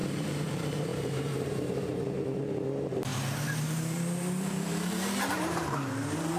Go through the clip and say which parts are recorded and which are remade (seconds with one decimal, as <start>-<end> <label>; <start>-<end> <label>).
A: 0.0-6.4 remade